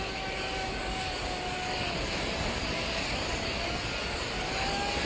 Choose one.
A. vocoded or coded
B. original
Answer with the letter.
A